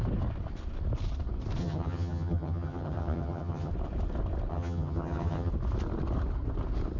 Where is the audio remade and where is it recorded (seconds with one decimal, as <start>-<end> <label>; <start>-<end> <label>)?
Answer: 0.0-1.6 recorded; 1.6-3.7 remade; 3.7-4.5 recorded; 4.5-5.5 remade; 5.5-7.0 recorded